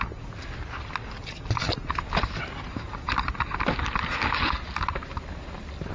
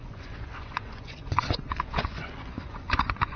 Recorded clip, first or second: first